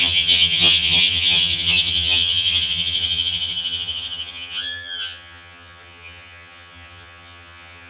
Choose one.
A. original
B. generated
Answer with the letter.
B